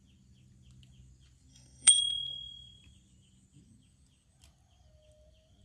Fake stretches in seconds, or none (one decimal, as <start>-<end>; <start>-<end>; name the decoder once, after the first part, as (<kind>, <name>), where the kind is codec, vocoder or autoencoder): 1.5-2.0 (codec, SNAC)